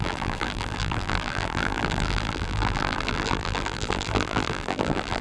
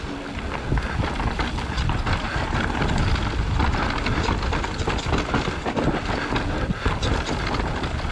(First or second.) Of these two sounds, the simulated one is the first